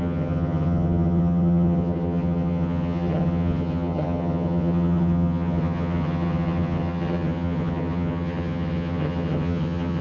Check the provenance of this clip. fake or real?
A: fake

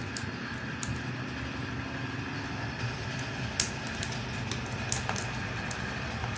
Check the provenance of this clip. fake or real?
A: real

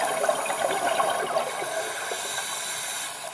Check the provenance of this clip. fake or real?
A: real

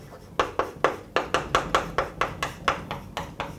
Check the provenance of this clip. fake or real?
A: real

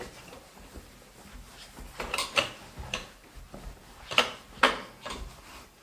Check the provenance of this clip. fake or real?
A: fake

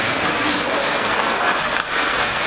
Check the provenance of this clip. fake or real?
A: fake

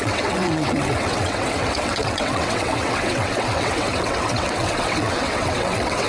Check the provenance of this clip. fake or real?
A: fake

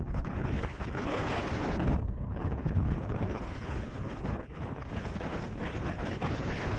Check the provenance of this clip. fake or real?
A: fake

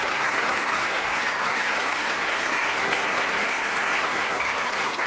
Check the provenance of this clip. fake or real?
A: fake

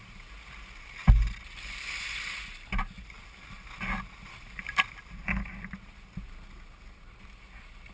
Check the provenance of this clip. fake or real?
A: real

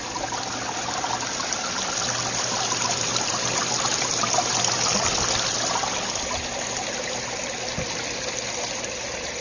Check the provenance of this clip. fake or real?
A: fake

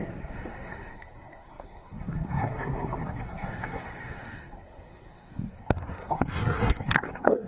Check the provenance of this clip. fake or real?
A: fake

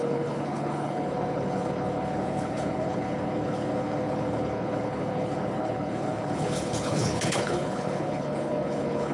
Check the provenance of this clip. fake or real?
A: fake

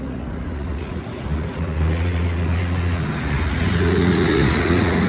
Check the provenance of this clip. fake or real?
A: fake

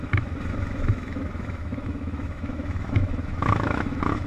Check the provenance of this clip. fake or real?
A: fake